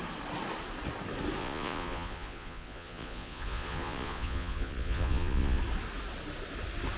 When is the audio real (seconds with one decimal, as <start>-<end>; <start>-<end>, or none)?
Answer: 0.0-1.4; 5.6-7.0